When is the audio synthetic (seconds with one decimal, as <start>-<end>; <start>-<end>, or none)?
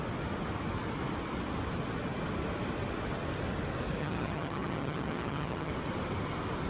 4.0-5.7